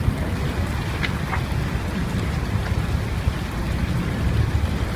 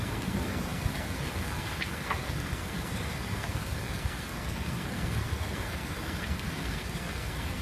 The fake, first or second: second